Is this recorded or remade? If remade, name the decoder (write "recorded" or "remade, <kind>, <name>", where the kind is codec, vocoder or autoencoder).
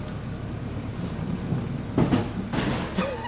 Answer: recorded